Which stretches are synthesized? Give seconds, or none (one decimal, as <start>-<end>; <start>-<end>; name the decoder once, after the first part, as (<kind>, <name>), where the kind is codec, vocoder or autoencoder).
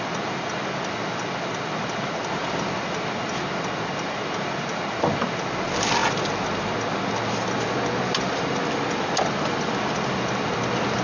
none